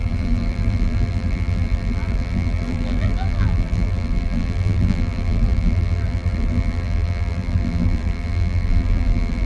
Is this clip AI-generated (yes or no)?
yes